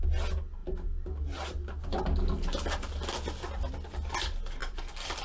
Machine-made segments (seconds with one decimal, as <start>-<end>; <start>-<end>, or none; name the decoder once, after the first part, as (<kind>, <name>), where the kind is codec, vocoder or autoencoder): 4.6-5.2 (vocoder, BigVGAN v2)